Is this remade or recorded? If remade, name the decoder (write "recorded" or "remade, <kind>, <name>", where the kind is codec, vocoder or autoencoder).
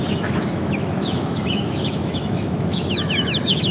remade, autoencoder, DAC-VAE